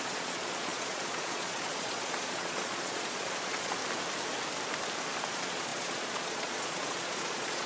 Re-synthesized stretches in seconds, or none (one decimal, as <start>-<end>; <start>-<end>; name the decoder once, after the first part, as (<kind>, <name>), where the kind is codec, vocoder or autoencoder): 0.0-3.8 (vocoder, Vocos); 5.3-7.7